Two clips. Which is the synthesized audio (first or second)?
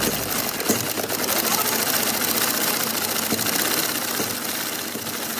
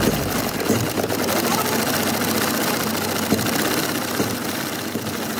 second